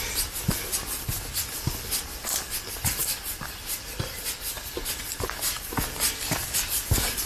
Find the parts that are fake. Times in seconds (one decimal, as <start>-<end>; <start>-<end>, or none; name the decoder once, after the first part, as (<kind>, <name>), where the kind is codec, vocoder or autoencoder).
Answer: none

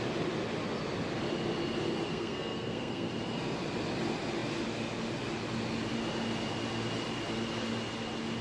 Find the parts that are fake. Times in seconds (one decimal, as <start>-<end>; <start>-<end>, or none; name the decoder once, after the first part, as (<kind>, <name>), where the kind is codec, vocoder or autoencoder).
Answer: 2.1-3.1 (codec, SNAC)

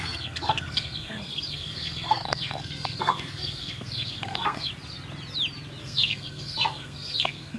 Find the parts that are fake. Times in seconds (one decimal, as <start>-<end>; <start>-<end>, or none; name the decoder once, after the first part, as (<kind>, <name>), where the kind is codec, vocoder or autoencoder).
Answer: 0.0-4.7 (codec, SNAC); 5.8-7.6